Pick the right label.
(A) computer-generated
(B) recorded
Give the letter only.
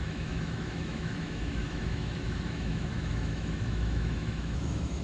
A